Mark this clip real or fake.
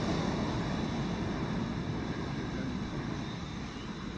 real